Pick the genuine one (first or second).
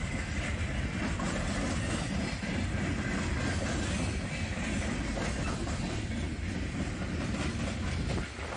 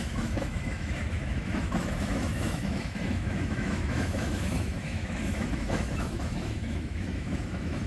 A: first